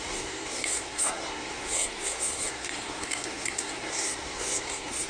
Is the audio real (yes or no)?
no